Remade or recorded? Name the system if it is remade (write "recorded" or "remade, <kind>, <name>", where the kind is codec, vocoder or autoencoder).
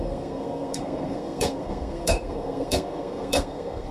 remade, codec, SNAC